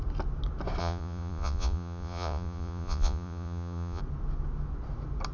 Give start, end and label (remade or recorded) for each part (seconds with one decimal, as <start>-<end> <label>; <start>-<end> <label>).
0.0-0.8 recorded; 0.8-4.0 remade; 4.0-5.3 recorded